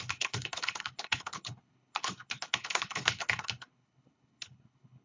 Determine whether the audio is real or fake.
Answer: fake